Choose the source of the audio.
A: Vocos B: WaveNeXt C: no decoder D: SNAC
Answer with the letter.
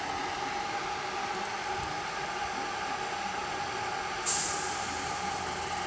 C